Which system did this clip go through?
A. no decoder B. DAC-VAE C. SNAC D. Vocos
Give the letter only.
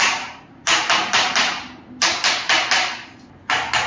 A